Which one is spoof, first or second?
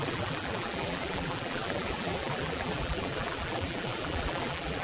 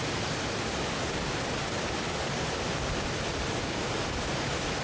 first